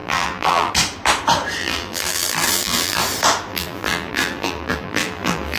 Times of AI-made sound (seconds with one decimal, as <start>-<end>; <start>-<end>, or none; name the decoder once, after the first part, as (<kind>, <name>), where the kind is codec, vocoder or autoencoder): 0.0-0.7 (vocoder, BigVGAN v2); 1.6-3.0; 3.5-5.6